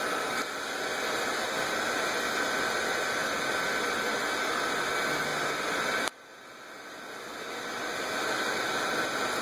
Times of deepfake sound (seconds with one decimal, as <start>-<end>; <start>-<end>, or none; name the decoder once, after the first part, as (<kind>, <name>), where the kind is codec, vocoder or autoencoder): none